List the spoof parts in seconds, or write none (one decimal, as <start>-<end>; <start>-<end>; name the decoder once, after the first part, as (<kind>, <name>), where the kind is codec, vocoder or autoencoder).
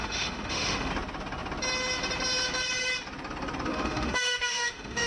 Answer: 0.0-0.9 (autoencoder, DAC-VAE); 3.7-5.1